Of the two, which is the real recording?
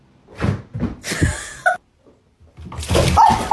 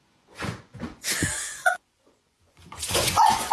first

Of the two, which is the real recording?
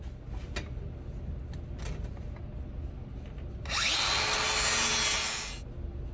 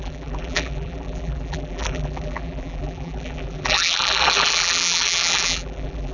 first